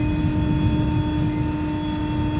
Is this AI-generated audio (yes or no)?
no